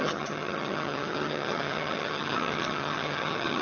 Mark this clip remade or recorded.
remade